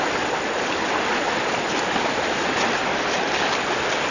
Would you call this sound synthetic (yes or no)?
no